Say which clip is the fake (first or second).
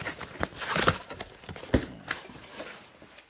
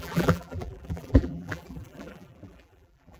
second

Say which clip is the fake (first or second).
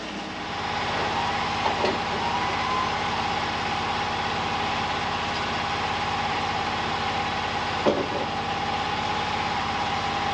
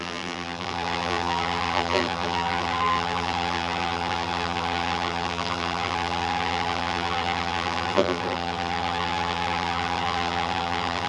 second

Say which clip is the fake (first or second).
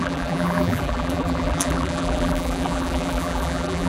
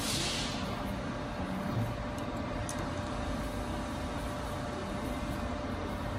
first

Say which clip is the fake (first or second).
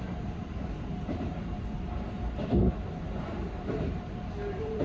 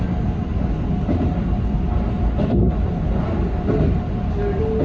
first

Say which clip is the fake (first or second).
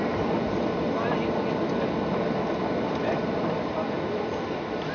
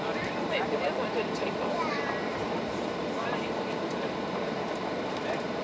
second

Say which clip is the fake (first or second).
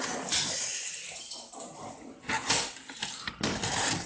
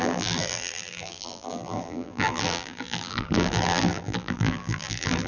second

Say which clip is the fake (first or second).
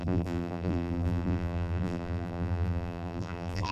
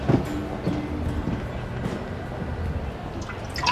first